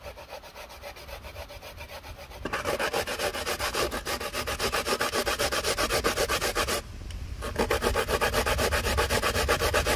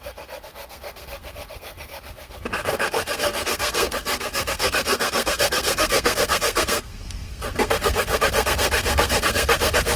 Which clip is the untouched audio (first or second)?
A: first